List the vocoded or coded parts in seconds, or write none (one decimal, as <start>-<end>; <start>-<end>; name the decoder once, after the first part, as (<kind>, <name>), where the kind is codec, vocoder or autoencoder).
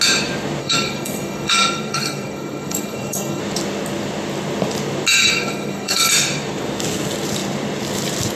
0.6-3.4 (codec, SNAC); 5.2-6.1